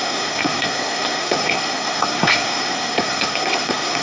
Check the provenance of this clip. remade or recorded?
remade